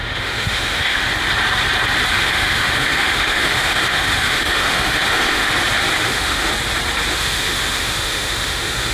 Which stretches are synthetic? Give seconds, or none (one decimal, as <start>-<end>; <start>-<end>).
0.0-1.1; 2.1-5.5; 6.0-6.5; 7.1-8.9